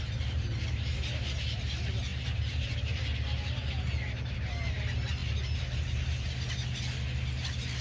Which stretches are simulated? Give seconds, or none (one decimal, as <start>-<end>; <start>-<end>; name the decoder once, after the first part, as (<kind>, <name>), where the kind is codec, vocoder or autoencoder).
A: none